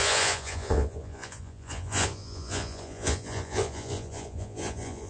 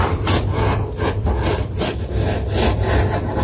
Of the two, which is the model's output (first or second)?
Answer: first